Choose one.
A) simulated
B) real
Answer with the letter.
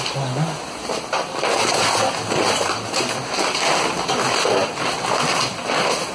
B